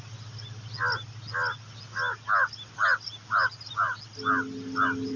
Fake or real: real